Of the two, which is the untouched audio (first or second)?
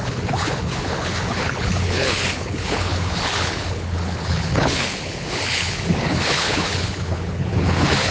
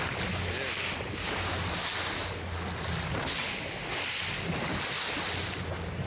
second